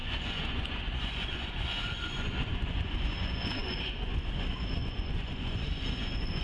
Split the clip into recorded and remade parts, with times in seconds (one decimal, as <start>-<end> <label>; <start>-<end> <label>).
0.0-6.4 remade